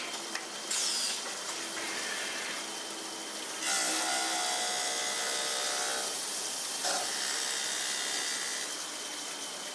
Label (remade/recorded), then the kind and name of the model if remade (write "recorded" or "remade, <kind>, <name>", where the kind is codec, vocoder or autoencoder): recorded